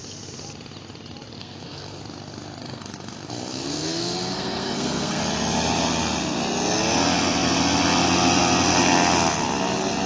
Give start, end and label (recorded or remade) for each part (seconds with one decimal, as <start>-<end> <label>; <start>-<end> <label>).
0.0-1.4 recorded; 1.4-2.0 remade; 2.0-2.6 recorded; 2.6-5.2 remade; 5.2-10.1 recorded